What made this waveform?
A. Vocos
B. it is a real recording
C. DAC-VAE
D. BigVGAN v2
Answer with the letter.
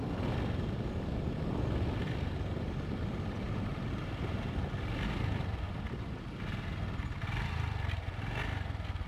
B